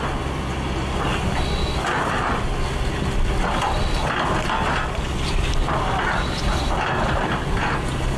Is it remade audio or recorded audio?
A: recorded